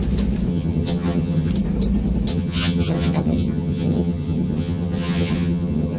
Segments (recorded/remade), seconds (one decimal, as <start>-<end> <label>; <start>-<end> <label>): 0.0-0.5 recorded; 0.5-1.5 remade; 1.5-2.3 recorded; 2.3-6.0 remade